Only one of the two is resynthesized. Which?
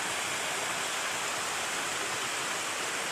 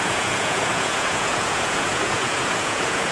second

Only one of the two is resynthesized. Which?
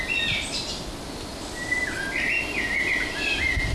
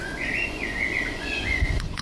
second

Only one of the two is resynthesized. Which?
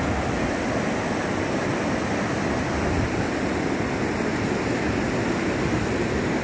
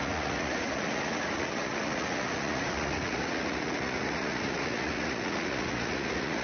second